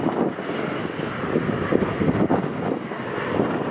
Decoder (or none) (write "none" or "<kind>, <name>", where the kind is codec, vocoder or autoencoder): none